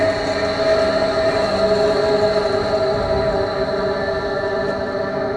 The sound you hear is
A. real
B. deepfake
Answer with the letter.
A